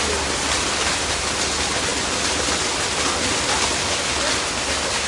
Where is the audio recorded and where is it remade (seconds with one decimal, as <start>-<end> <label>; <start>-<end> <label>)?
0.0-5.1 recorded